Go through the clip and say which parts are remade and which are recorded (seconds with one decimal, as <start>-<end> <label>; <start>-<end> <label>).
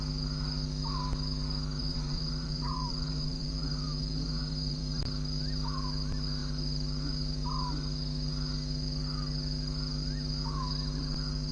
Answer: 0.0-1.8 recorded; 1.8-5.0 remade; 5.0-11.5 recorded